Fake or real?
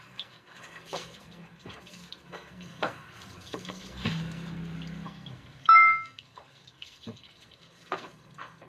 fake